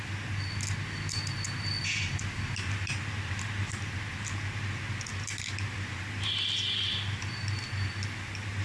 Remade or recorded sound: recorded